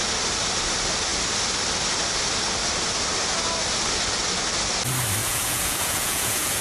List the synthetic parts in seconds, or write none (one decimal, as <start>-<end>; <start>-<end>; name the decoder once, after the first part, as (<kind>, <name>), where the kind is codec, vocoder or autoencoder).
5.2-6.6 (vocoder, Vocos)